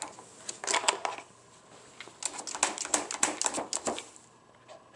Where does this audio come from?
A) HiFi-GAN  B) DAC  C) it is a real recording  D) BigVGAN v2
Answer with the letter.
C